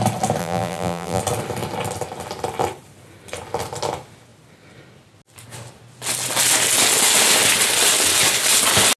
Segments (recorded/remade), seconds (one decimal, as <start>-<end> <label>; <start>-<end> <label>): 0.0-0.4 recorded; 0.4-1.2 remade; 1.2-9.0 recorded